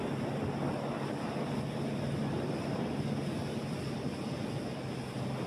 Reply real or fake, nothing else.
real